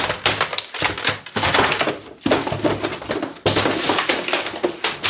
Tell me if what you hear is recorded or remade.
recorded